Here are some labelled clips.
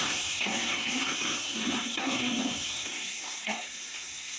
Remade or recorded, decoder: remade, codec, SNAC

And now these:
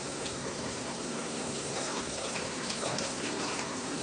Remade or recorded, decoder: remade, codec, SNAC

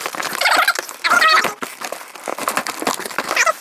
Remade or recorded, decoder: recorded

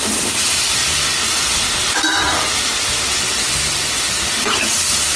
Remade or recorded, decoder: recorded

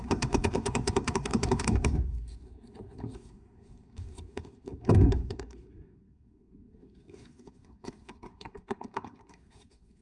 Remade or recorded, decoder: remade, codec, SNAC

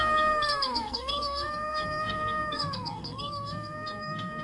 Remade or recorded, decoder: remade, codec, SNAC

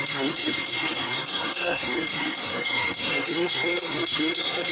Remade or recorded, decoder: remade, codec, SNAC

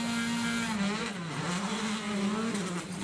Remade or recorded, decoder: recorded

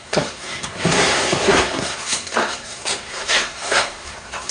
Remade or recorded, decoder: remade, codec, SNAC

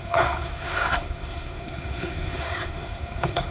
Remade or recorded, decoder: remade, codec, SNAC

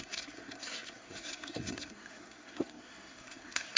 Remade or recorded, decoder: remade, codec, SNAC